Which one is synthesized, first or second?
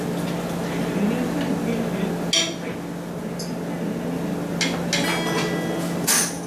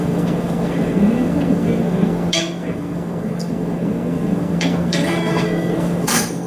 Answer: second